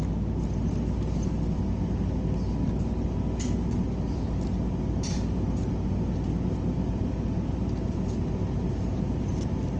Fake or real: real